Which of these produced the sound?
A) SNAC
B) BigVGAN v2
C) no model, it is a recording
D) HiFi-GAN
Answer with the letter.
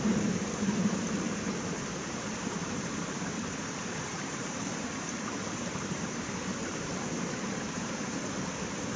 B